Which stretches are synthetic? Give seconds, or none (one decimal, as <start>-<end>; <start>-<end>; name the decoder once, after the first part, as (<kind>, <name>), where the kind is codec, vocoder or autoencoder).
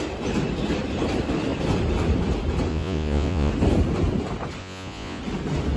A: 2.7-3.5 (vocoder, Vocos); 4.6-5.2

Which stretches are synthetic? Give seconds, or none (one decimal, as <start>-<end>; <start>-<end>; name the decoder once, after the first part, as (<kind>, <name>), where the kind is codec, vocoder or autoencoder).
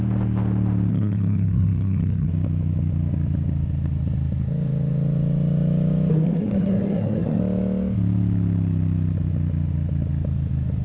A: 0.9-2.3 (codec, SNAC); 6.1-7.4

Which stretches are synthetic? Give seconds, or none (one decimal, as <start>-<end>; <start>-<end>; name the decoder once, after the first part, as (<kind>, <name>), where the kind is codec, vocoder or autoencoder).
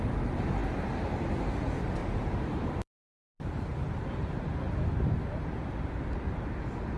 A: 2.0-3.3 (vocoder, BigVGAN v2)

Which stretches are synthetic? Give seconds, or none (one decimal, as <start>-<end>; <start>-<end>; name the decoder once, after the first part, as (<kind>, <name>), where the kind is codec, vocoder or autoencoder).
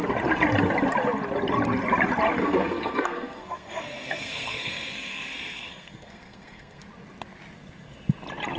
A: 2.4-6.8 (codec, SNAC)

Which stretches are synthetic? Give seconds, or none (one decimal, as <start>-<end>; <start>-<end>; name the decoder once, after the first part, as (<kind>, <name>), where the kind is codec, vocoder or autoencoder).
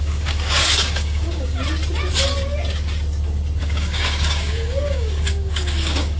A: 0.0-1.6 (codec, DAC); 3.6-6.2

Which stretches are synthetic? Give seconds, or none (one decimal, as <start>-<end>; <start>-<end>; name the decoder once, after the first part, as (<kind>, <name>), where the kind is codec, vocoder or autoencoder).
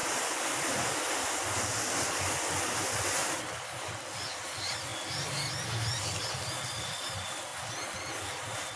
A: 2.6-7.5 (vocoder, BigVGAN v2); 8.2-8.8